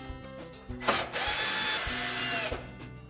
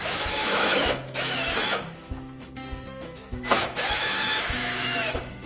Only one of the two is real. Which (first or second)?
first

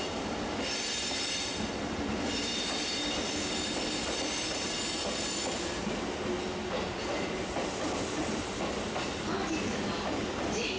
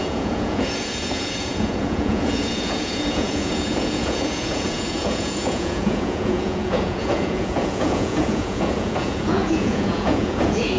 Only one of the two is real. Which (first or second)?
first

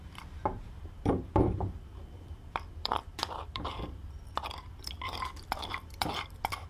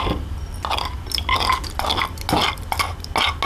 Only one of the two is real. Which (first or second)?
second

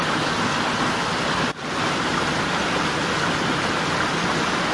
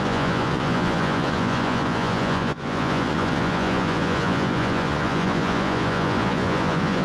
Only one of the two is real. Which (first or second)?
first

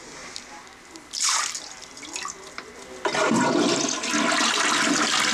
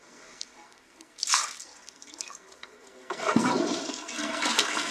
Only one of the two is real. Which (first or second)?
first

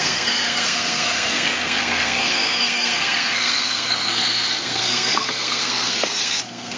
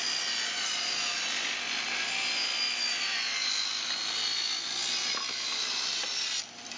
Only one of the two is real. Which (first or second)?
second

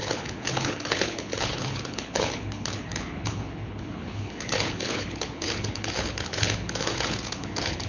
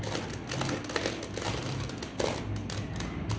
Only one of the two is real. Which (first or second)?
second